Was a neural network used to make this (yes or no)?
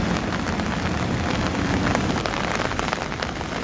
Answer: no